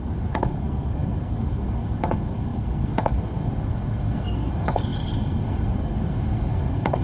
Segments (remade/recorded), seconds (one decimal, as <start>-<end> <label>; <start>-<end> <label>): 0.0-7.0 remade